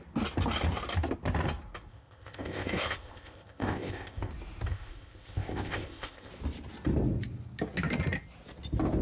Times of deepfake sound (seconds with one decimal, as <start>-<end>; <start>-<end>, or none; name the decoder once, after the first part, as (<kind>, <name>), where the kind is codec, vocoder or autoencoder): 1.9-4.3 (codec, ZipCodec); 4.7-6.3